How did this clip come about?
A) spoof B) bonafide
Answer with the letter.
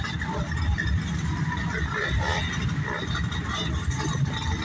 B